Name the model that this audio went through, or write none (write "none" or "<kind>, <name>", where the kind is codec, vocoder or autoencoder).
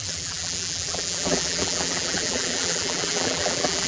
vocoder, BigVGAN v2